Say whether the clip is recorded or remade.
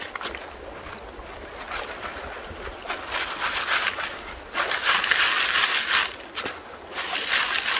recorded